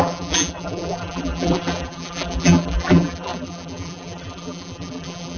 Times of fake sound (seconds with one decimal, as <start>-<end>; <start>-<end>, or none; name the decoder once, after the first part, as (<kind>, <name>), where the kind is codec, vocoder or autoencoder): 0.0-5.4 (vocoder, BigVGAN v2)